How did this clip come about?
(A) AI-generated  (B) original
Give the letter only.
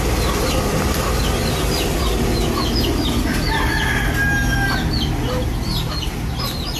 B